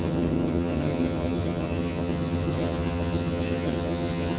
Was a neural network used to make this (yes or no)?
yes